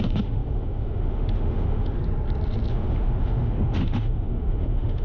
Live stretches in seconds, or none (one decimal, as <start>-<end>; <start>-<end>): 2.0-2.7